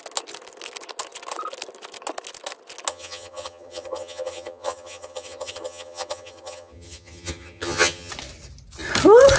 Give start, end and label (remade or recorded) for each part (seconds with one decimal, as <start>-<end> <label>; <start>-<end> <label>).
0.0-2.9 recorded; 2.9-8.1 remade; 8.1-9.4 recorded